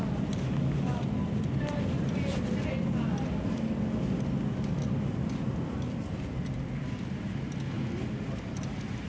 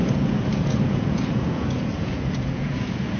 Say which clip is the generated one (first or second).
second